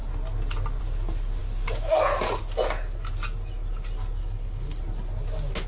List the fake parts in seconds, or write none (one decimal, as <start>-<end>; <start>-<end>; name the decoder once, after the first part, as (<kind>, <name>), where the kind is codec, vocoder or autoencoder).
4.2-4.8 (codec, HILCodec)